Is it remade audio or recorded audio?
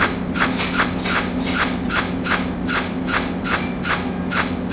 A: recorded